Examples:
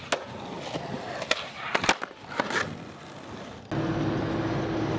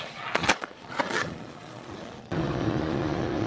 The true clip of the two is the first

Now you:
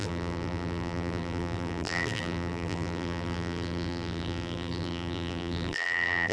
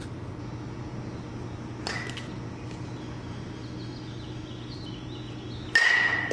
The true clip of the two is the second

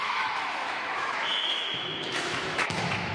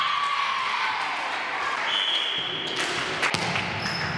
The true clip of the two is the second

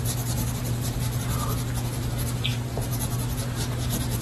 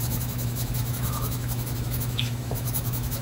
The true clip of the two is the first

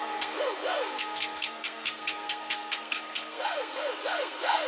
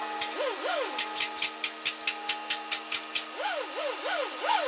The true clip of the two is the second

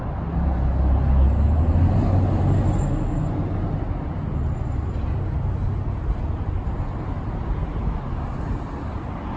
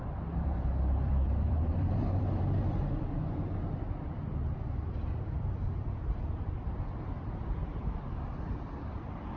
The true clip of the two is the first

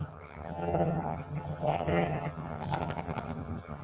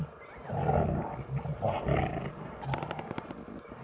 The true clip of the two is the second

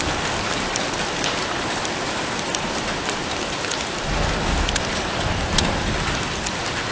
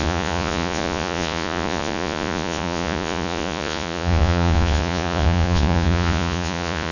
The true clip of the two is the first